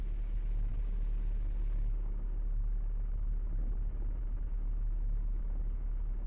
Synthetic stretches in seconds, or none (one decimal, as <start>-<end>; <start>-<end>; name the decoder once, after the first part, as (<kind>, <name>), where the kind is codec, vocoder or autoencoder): none